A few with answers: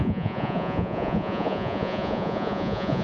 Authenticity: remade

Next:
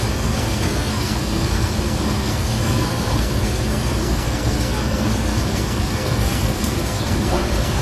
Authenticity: remade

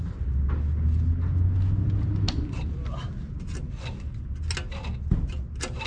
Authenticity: recorded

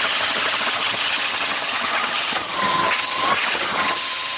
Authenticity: remade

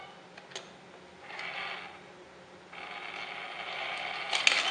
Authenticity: recorded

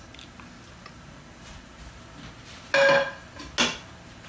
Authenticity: recorded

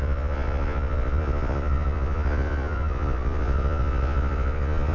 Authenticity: remade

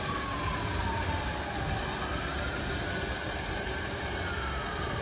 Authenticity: recorded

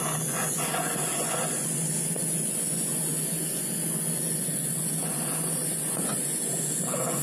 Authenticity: remade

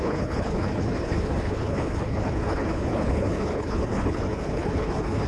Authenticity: remade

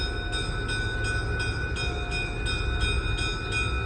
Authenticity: recorded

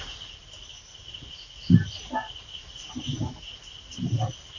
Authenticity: recorded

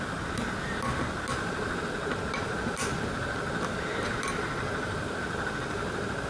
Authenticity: recorded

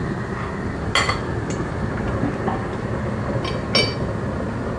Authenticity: recorded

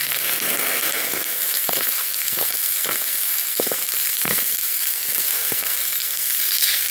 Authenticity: remade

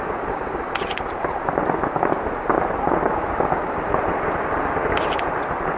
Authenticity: recorded